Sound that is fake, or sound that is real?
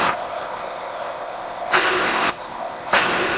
fake